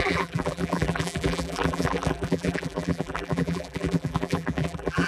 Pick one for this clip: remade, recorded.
remade